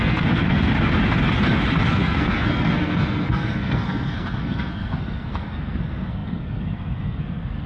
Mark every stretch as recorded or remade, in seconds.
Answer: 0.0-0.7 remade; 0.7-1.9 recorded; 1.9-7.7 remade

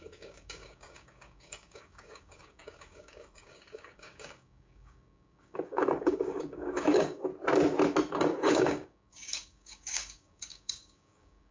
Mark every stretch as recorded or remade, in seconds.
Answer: 0.0-7.3 remade; 7.3-8.1 recorded; 8.1-11.5 remade

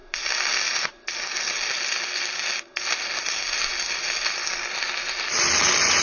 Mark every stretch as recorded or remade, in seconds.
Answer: 0.0-6.0 recorded

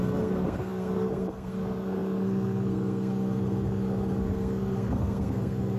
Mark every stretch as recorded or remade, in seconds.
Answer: 0.0-5.8 remade

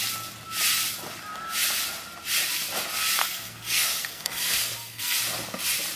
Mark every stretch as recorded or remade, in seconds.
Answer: 0.0-3.2 recorded; 3.2-5.2 remade; 5.2-6.0 recorded

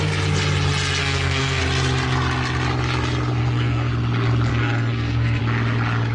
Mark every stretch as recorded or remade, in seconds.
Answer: 0.0-1.0 recorded; 1.0-1.6 remade; 1.6-3.4 recorded; 3.4-3.9 remade; 3.9-4.5 recorded; 4.5-5.4 remade; 5.4-6.1 recorded

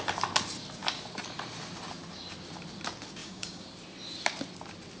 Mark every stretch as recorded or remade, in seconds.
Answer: 0.0-3.2 recorded; 3.2-3.7 remade; 3.7-5.0 recorded

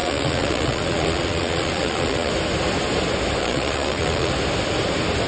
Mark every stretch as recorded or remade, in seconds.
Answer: 0.0-2.3 remade; 2.3-3.4 recorded; 3.4-4.3 remade; 4.3-5.3 recorded